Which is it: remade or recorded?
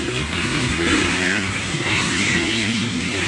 remade